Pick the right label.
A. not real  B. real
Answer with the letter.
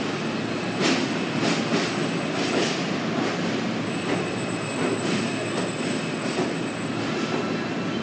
B